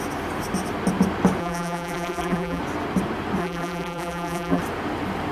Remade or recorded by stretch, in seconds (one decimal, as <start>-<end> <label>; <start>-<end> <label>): 0.0-1.4 recorded; 1.4-2.6 remade; 2.6-3.4 recorded; 3.4-4.6 remade; 4.6-5.3 recorded